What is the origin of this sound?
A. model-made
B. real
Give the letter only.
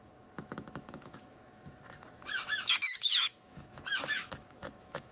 A